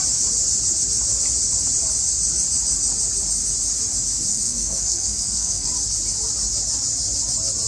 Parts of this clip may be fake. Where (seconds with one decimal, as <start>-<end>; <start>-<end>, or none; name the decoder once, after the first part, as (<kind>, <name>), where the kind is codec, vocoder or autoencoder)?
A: 4.3-5.7 (codec, SNAC)